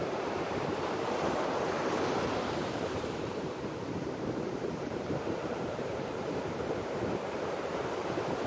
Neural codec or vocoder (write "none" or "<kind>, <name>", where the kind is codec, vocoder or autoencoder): vocoder, BigVGAN v2